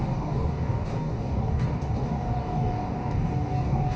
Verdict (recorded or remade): remade